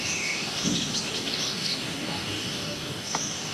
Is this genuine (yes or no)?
no